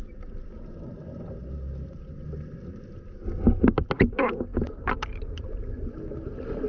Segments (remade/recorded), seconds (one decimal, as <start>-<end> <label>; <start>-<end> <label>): 0.0-6.7 recorded